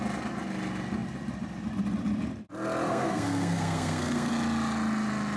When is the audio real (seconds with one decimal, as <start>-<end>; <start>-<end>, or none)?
0.0-2.9; 4.3-5.4